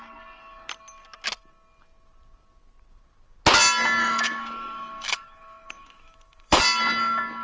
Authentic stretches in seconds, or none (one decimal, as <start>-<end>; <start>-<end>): 0.0-4.0; 6.6-7.4

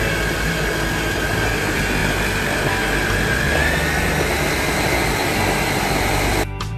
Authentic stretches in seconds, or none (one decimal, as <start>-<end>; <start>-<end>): 0.0-6.8

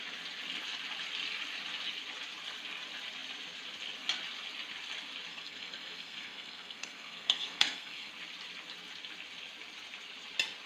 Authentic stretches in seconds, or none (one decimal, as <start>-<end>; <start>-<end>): 0.0-5.3; 8.1-10.7

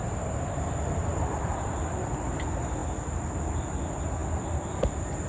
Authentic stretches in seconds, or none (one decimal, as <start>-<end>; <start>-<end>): 0.0-1.1; 2.0-5.3

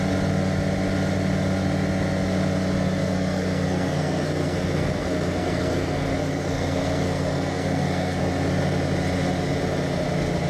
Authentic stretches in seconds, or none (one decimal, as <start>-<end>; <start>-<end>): 0.0-3.0; 8.2-10.5